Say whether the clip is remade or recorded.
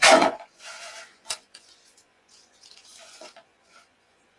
remade